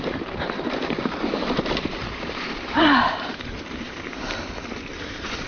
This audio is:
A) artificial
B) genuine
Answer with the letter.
A